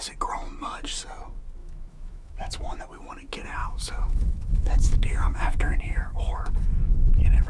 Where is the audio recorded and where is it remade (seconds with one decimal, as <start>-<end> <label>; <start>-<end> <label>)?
0.0-1.6 recorded; 1.6-2.8 remade; 2.8-3.6 recorded; 3.6-6.5 remade; 6.5-7.5 recorded